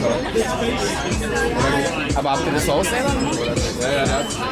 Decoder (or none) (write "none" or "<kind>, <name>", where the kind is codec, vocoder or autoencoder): none